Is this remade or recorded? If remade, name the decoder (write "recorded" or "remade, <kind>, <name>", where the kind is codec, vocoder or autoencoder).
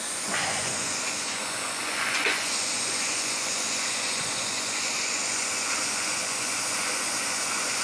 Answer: remade, vocoder, Vocos